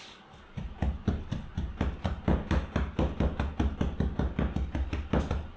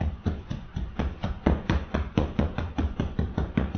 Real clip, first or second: first